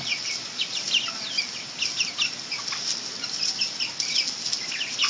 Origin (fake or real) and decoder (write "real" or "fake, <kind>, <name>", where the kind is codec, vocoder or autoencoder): real